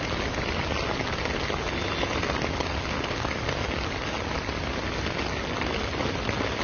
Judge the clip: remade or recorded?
recorded